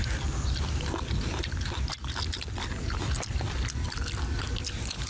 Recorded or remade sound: recorded